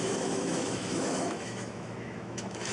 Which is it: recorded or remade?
remade